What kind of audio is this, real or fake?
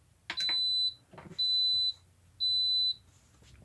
real